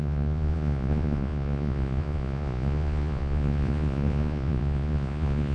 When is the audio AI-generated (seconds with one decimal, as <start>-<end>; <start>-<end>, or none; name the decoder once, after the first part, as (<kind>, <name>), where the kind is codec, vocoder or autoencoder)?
0.0-5.5 (vocoder, Vocos)